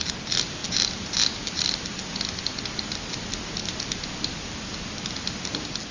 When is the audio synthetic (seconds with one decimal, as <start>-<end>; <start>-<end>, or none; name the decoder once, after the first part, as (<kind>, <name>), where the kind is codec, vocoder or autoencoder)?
none